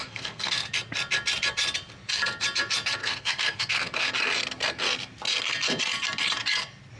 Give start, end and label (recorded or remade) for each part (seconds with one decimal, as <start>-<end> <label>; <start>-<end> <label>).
0.0-0.7 remade; 0.7-3.0 recorded; 3.0-4.1 remade; 4.1-7.0 recorded